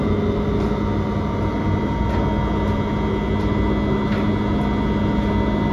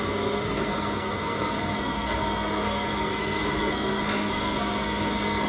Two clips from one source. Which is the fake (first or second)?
second